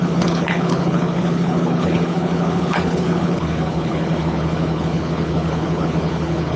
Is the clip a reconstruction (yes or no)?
yes